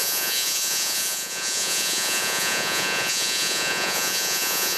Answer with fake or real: fake